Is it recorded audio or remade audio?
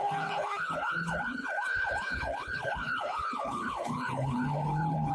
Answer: remade